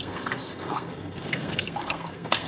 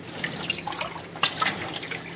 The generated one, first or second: first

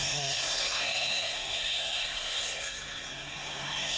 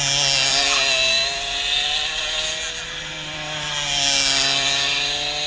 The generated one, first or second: first